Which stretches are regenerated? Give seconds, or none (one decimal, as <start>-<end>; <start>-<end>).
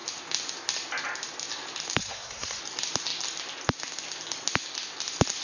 2.0-2.6